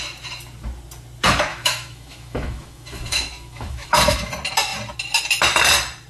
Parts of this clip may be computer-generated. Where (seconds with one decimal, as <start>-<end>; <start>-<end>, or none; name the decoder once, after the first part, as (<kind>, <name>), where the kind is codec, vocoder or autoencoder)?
1.5-4.3 (autoencoder, DAC-VAE)

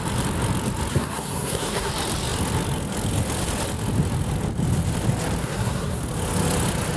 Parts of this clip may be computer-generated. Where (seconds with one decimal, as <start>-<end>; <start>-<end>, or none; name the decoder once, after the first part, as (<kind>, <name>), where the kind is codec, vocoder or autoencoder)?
0.9-1.9 (codec, SNAC); 5.4-6.0